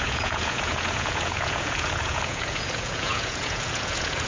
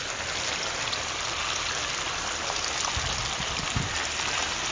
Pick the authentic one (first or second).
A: second